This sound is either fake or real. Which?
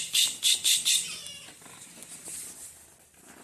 real